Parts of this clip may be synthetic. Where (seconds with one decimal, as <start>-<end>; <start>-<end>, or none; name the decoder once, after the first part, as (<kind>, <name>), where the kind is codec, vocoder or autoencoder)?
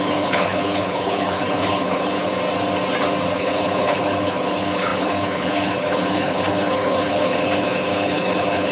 0.0-2.3 (codec, HILCodec); 3.3-8.7